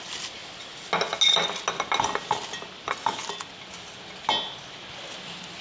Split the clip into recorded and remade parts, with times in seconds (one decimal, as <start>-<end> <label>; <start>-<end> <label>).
0.0-5.6 recorded